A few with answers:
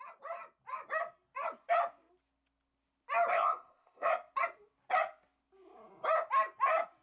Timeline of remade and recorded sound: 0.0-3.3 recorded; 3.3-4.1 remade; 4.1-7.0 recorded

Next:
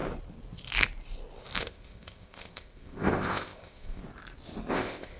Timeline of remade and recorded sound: 0.0-1.6 recorded; 1.6-4.0 remade; 4.0-4.7 recorded; 4.7-5.2 remade

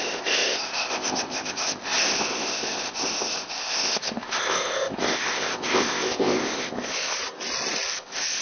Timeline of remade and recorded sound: 0.0-7.2 remade; 7.2-7.9 recorded; 7.9-8.4 remade

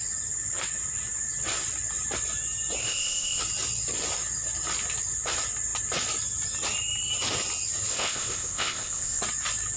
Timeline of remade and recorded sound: 0.0-2.8 recorded; 2.8-3.4 remade; 3.4-7.9 recorded; 7.9-9.2 remade; 9.2-9.8 recorded